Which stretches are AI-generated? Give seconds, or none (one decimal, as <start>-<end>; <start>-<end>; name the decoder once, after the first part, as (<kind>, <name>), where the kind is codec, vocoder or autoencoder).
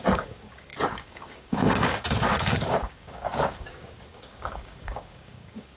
0.0-5.8 (codec, DAC)